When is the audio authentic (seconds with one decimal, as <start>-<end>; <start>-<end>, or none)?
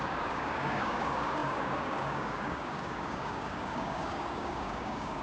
none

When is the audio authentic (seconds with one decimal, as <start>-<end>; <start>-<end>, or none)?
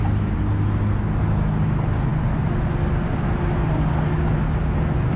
0.0-5.2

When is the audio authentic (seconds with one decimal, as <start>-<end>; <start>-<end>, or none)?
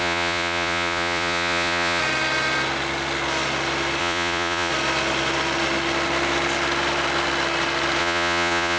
2.0-4.0; 4.7-8.0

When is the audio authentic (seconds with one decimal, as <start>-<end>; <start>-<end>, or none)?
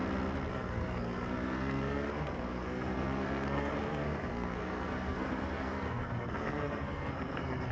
0.0-0.5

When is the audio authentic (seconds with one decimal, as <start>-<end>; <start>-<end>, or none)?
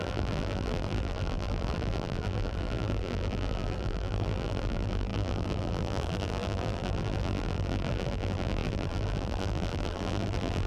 none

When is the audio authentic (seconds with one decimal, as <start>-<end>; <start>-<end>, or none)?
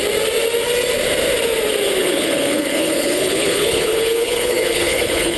0.0-2.0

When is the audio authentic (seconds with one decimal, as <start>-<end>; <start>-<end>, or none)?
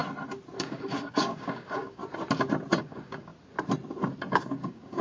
0.0-0.6; 2.0-2.8; 3.3-4.3